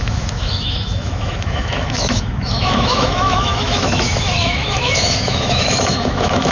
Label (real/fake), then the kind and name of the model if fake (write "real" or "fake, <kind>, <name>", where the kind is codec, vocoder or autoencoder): fake, autoencoder, DAC-VAE